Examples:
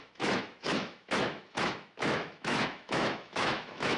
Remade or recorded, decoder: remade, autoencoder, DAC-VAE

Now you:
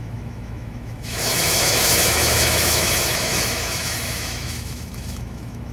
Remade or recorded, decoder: remade, autoencoder, DAC-VAE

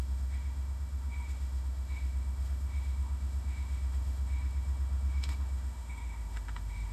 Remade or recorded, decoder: remade, autoencoder, DAC-VAE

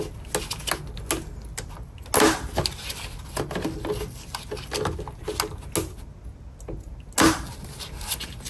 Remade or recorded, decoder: recorded